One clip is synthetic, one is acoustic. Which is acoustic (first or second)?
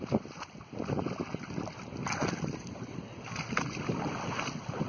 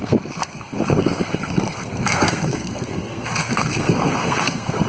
first